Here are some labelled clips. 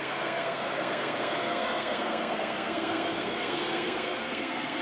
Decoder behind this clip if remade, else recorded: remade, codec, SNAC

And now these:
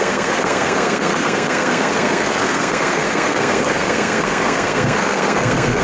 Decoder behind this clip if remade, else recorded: remade, codec, SNAC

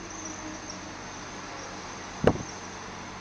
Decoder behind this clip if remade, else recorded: recorded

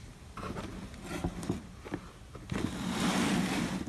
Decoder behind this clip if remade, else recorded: recorded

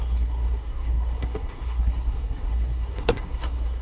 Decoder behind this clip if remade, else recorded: remade, codec, SNAC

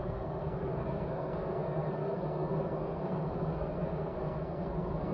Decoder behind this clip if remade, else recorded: remade, codec, SNAC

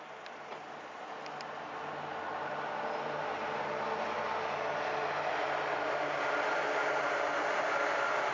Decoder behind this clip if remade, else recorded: recorded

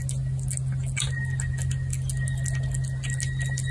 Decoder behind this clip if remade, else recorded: recorded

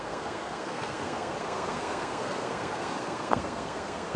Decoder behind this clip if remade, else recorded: remade, codec, SNAC